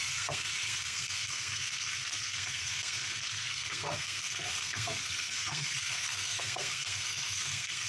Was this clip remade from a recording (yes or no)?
yes